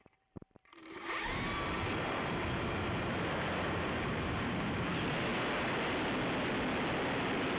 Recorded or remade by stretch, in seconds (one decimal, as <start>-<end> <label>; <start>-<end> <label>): 0.0-5.3 remade; 5.3-7.1 recorded; 7.1-7.6 remade